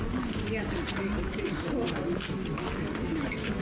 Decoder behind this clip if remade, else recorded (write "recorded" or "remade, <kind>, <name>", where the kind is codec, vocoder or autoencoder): recorded